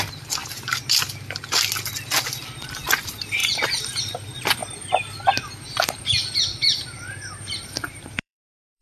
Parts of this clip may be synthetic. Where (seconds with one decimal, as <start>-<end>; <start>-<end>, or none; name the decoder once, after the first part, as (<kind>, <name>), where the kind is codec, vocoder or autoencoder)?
0.0-0.4 (vocoder, BigVGAN v2); 2.4-3.4; 4.0-4.6; 7.5-8.8